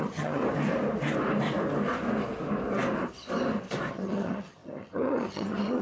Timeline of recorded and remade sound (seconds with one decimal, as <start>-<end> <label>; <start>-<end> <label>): 0.0-0.4 remade; 0.4-3.9 recorded; 3.9-5.8 remade